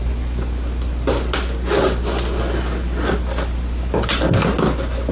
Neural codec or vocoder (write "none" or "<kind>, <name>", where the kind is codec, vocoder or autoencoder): none